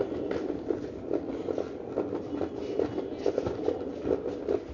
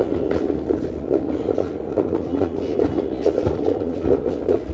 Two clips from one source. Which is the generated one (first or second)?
second